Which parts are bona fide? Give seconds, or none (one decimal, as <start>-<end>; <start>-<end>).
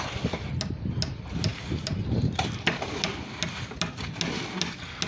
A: 0.0-5.1